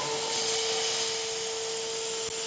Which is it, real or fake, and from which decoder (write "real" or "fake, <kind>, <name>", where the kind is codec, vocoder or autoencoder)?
real